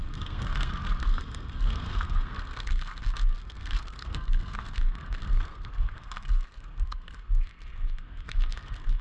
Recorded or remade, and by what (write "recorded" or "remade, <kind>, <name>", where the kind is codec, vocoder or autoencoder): remade, codec, SNAC